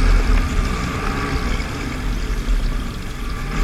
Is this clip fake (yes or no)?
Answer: no